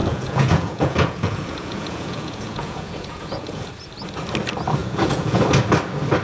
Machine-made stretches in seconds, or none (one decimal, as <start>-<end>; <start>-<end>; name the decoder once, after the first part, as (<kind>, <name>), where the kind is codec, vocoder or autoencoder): 0.0-3.7 (vocoder, Vocos); 4.8-5.4